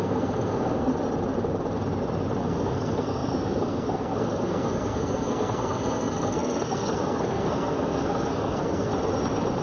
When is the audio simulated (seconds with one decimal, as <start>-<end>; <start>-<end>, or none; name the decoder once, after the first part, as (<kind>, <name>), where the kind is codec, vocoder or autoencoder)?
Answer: 0.0-0.9 (codec, SNAC); 2.4-8.9